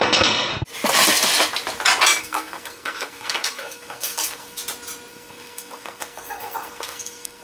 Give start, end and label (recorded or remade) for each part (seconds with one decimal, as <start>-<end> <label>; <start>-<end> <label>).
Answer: 0.0-0.5 remade; 0.5-2.2 recorded; 2.2-4.6 remade; 4.6-5.1 recorded; 5.1-7.4 remade